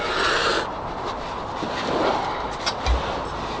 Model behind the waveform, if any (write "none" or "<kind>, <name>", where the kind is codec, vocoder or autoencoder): none